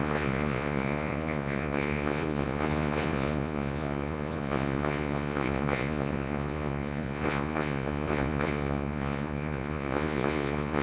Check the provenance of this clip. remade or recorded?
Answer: remade